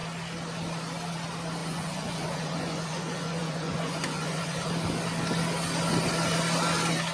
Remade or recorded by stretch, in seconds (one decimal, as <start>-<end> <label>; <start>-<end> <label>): 0.0-1.6 recorded; 1.6-4.7 remade; 4.7-7.1 recorded